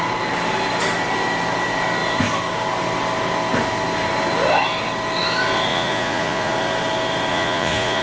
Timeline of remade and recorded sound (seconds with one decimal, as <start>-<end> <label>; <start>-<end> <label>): 0.0-5.7 recorded; 5.7-6.5 remade; 6.5-7.3 recorded; 7.3-8.0 remade